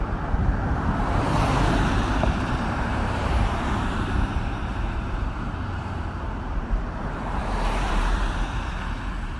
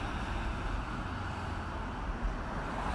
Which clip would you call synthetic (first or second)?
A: first